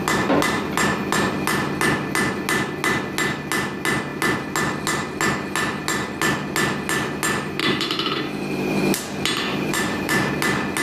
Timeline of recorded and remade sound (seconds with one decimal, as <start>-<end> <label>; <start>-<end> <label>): 0.0-7.6 recorded; 7.6-8.9 remade; 8.9-9.5 recorded; 9.5-10.3 remade; 10.3-10.8 recorded